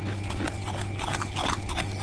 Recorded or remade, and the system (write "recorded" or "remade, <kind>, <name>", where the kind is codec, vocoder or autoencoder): recorded